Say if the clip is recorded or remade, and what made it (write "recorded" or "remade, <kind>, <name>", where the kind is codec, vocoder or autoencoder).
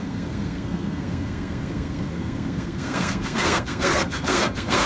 remade, codec, SNAC